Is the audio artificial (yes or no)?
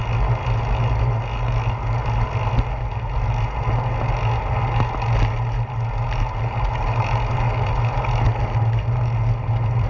no